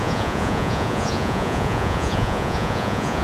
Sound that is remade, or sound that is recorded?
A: remade